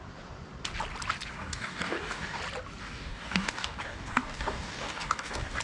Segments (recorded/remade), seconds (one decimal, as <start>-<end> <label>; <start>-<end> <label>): 0.0-1.3 recorded; 1.3-2.4 remade; 2.4-2.8 recorded; 2.8-5.6 remade